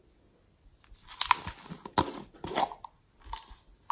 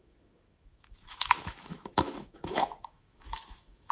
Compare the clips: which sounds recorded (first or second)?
first